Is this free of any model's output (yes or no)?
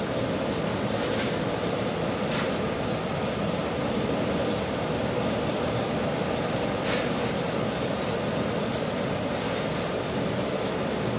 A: no